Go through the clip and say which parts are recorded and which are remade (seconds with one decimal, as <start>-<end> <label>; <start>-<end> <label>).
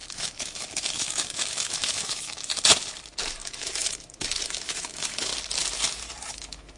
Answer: 0.0-2.5 remade; 2.5-3.4 recorded; 3.4-5.3 remade; 5.3-6.3 recorded; 6.3-6.8 remade